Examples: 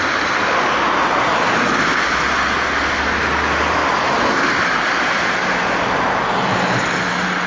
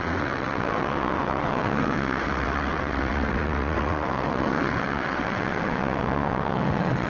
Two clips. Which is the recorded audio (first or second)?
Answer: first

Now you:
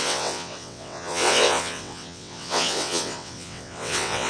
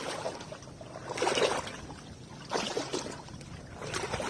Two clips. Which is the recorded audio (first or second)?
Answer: second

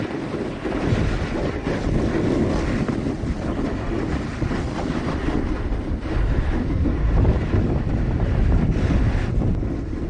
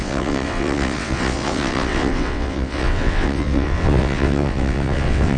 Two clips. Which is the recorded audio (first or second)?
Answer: first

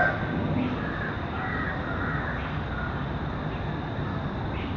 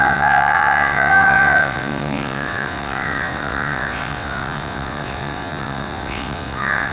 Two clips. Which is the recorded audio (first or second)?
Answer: first